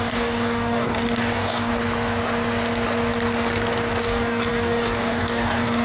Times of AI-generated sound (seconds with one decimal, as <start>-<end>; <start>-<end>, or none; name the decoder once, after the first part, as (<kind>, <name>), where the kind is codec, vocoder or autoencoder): 0.0-1.7 (codec, DAC); 4.0-5.8